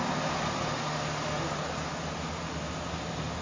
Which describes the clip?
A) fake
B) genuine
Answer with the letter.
B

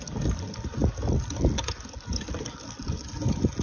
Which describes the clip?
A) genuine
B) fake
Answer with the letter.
A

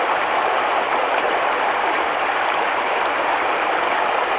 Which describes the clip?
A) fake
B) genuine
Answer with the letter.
B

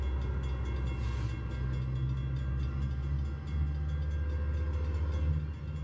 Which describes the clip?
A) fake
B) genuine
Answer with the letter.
B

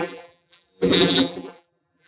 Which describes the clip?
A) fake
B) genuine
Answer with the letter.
A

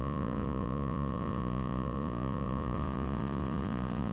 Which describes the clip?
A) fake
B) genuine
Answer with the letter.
A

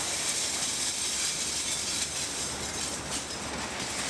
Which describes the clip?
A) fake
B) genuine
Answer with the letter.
B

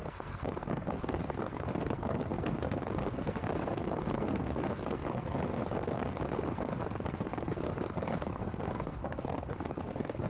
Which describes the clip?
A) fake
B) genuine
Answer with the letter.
A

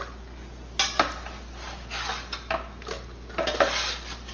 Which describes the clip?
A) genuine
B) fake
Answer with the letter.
A